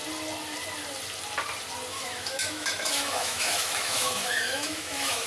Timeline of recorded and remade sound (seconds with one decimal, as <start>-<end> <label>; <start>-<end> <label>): 0.0-1.9 recorded; 1.9-5.3 remade